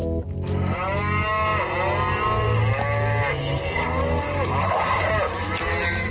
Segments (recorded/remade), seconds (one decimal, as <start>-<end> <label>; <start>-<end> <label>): 0.0-4.6 recorded; 4.6-5.1 remade; 5.1-6.1 recorded